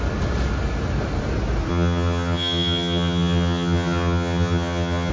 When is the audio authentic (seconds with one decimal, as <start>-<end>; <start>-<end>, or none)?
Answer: 0.0-1.7